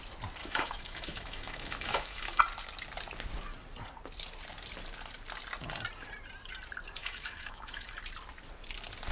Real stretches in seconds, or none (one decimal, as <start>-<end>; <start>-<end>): 0.0-0.4; 2.4-7.0; 7.9-9.1